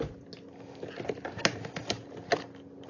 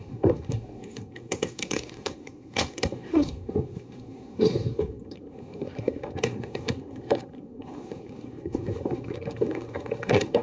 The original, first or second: first